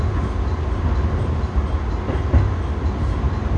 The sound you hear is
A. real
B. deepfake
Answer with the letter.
A